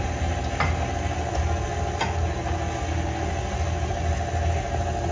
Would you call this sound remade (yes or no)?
no